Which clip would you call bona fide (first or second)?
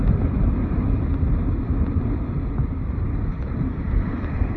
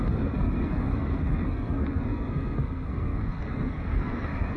first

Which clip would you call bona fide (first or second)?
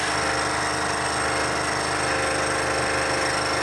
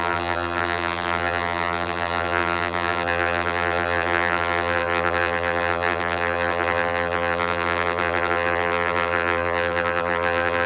first